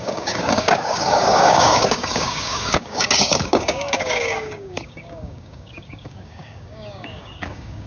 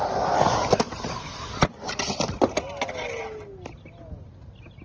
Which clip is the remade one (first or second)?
first